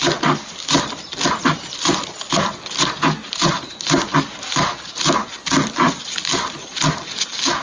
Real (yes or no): yes